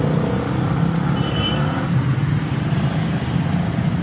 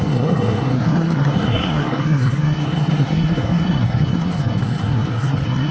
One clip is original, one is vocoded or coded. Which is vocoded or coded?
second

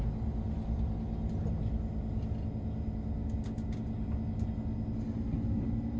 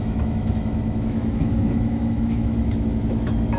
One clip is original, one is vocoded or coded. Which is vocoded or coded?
second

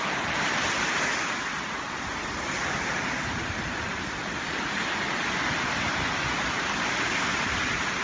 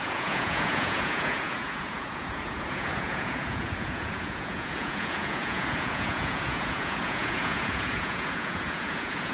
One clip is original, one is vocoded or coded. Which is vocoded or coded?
second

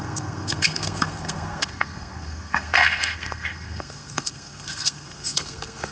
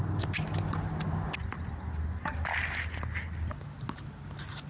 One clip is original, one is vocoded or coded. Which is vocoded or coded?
first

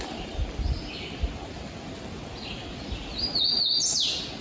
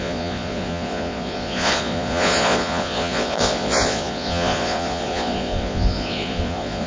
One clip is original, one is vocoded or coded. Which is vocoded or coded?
second